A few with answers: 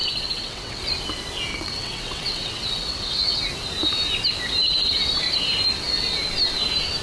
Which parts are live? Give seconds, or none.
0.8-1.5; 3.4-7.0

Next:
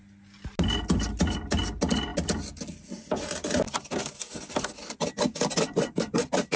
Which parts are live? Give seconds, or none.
0.0-6.6

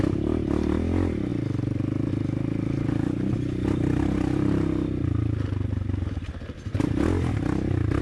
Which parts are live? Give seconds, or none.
0.0-8.0

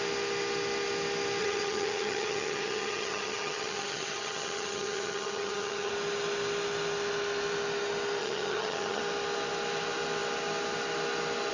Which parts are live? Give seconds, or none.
0.0-1.4; 5.9-8.2; 9.0-11.5

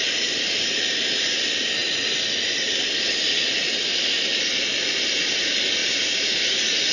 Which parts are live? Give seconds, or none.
0.0-5.8; 6.5-6.9